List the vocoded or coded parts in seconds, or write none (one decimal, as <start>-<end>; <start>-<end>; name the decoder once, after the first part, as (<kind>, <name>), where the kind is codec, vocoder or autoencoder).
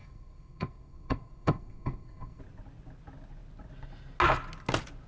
0.0-2.4 (codec, SNAC)